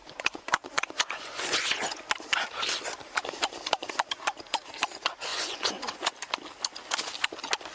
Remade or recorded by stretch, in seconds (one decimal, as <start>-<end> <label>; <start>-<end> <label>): 0.0-2.0 remade; 2.0-5.3 recorded; 5.3-6.1 remade; 6.1-7.7 recorded